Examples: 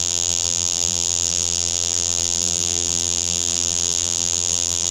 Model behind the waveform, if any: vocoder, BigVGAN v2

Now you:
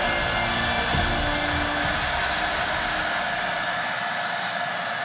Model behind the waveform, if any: none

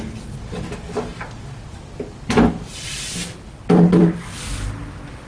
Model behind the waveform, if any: none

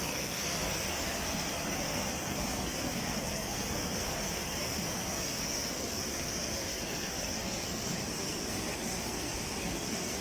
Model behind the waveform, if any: codec, SNAC